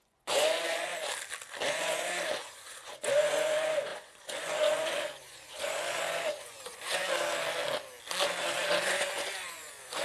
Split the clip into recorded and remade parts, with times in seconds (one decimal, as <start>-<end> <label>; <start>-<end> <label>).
0.0-0.9 remade; 0.9-1.7 recorded; 1.7-7.0 remade; 7.0-8.7 recorded; 8.7-10.0 remade